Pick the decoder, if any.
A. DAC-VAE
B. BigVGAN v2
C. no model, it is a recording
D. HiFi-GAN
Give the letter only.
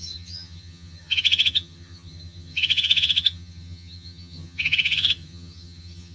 D